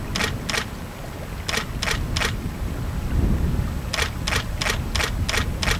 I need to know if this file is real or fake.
real